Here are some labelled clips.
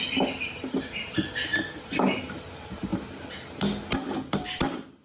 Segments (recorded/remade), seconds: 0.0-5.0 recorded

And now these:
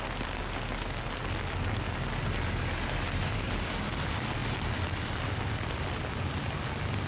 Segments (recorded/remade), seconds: 0.0-7.1 recorded

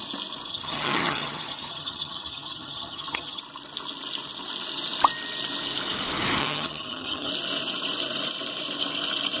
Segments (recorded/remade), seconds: 0.0-0.5 recorded; 0.5-3.4 remade; 3.4-6.4 recorded; 6.4-7.3 remade; 7.3-9.4 recorded

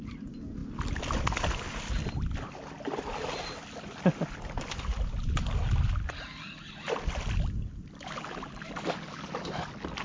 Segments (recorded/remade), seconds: 0.0-10.0 recorded

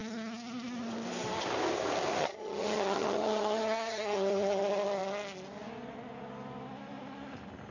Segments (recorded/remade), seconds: 0.0-2.2 recorded; 2.2-4.6 remade; 4.6-7.7 recorded

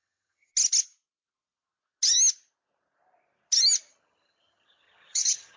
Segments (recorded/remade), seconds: 0.0-0.5 remade; 0.5-3.9 recorded; 3.9-5.6 remade

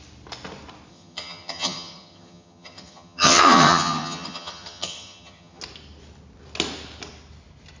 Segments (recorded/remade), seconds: 0.0-0.9 recorded; 0.9-5.6 remade; 5.6-7.8 recorded

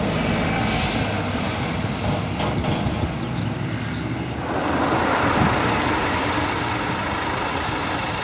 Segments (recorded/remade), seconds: 0.0-8.2 recorded